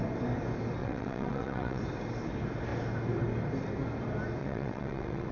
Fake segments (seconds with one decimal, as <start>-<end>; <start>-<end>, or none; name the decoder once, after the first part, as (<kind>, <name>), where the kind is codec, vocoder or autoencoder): 0.8-1.8 (vocoder, WaveNeXt); 4.4-5.3

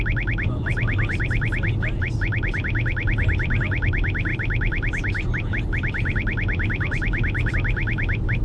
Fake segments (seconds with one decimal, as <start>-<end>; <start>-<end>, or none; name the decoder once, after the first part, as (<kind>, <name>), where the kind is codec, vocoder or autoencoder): none

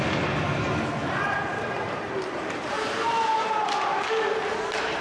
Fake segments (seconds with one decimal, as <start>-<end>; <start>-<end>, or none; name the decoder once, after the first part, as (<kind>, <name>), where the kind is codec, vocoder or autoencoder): 1.0-4.0 (vocoder, BigVGAN v2)

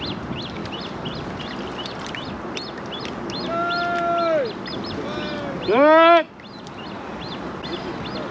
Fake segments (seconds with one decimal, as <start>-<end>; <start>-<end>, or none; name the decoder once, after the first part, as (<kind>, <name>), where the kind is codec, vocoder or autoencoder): none